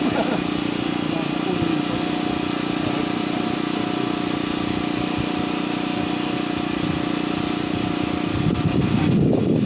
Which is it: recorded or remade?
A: recorded